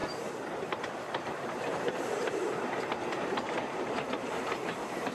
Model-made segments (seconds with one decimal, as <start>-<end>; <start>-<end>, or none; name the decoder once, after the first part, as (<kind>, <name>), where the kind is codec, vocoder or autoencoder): 0.6-5.1 (vocoder, BigVGAN v2)